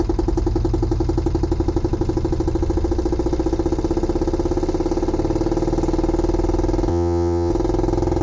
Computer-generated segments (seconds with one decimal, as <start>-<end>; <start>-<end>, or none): 6.9-7.5